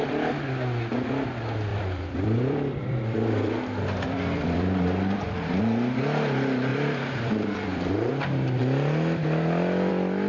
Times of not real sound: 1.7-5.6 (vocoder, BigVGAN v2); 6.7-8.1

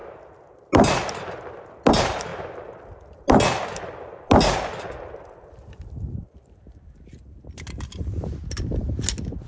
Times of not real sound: 1.9-2.3 (vocoder, BigVGAN v2); 5.5-9.5

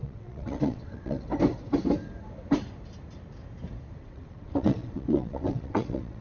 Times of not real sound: 0.0-1.3 (vocoder, WaveNeXt); 4.0-6.2